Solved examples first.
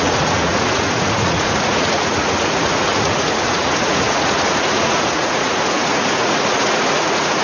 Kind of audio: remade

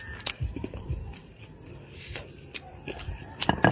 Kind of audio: recorded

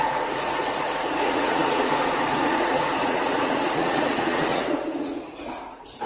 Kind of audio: remade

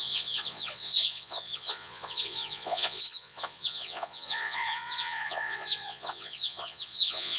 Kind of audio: remade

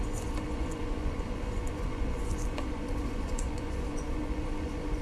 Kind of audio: remade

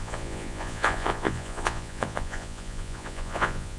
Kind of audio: remade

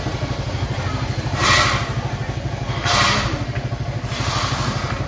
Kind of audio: recorded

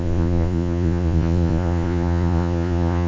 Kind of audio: remade